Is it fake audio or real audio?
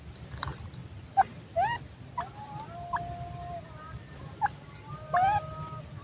real